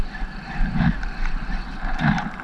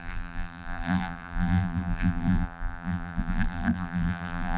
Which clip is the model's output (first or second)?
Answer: second